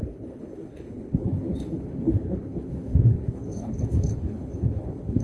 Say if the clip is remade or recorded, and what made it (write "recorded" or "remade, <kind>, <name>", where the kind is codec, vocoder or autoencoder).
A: remade, codec, HILCodec